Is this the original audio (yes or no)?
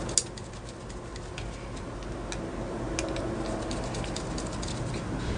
yes